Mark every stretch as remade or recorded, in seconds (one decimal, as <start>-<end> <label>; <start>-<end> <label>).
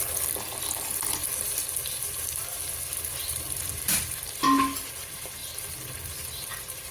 0.0-1.2 recorded; 1.2-4.4 remade; 4.4-6.9 recorded